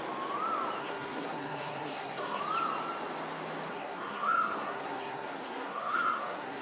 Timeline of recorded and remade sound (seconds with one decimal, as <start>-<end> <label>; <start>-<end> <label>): 0.0-0.8 recorded; 0.8-2.4 remade; 2.4-3.7 recorded; 3.7-6.6 remade

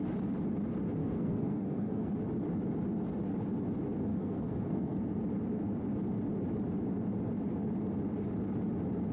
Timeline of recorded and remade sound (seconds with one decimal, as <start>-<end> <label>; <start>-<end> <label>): 0.0-1.0 recorded; 1.0-2.1 remade; 2.1-4.1 recorded; 4.1-5.2 remade; 5.2-9.1 recorded

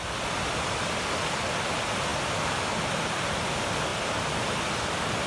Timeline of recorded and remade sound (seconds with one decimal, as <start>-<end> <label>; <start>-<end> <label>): 0.0-5.3 recorded

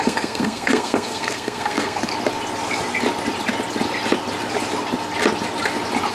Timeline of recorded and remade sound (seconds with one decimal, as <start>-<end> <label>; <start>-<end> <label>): 0.0-2.1 remade; 2.1-6.1 recorded

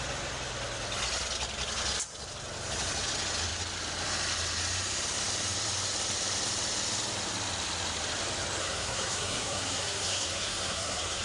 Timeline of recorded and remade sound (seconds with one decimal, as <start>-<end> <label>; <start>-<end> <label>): 0.0-8.6 recorded; 8.6-11.2 remade

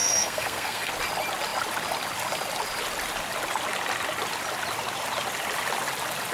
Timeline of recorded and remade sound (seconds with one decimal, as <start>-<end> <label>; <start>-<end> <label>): 0.0-0.9 remade; 0.9-6.3 recorded